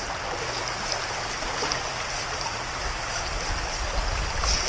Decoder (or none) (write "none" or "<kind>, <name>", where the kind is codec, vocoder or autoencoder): none